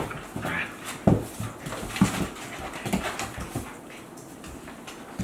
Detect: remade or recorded recorded